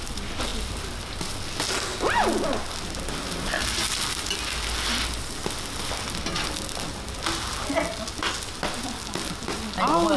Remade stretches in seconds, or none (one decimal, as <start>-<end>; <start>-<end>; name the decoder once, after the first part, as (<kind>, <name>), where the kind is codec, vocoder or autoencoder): none